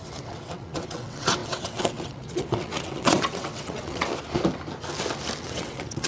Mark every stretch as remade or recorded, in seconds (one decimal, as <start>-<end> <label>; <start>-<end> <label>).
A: 0.0-4.1 remade; 4.1-5.4 recorded; 5.4-6.1 remade